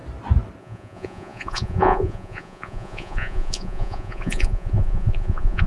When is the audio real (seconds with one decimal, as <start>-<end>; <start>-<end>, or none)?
0.0-0.6